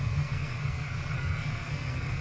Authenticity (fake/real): fake